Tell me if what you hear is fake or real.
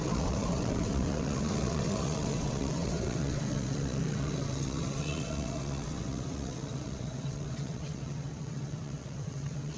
fake